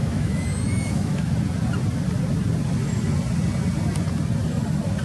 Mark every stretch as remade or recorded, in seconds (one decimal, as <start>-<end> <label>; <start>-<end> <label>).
0.0-1.3 remade; 1.3-5.0 recorded